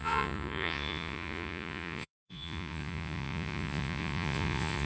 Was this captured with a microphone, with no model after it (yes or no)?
no